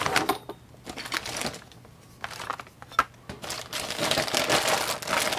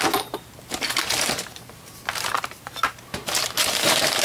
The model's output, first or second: second